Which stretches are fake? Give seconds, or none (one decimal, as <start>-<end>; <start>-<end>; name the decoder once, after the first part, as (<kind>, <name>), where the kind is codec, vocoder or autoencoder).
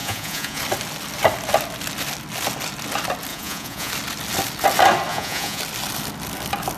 0.0-0.6 (vocoder, Vocos); 3.3-3.9; 5.1-5.6